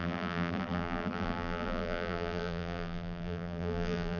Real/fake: fake